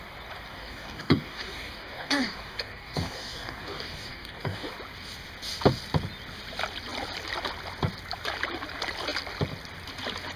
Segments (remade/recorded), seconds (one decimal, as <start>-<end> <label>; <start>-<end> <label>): 0.0-0.5 recorded; 0.5-4.7 remade; 4.7-10.4 recorded